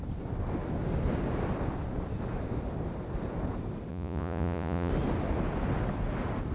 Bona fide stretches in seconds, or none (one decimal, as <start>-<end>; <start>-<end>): 0.0-3.9; 4.9-6.5